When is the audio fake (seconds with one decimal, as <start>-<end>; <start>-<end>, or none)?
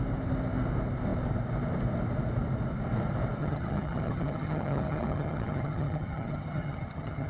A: 3.4-7.3